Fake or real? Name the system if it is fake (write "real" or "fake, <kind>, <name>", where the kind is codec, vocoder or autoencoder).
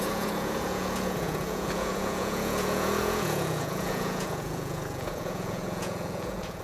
fake, vocoder, Vocos